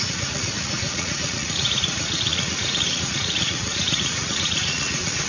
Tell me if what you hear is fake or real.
fake